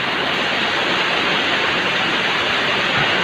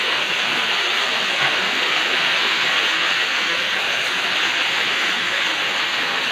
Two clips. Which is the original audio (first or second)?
first